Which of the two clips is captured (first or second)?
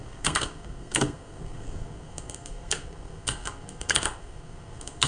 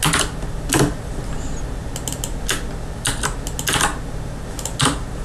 second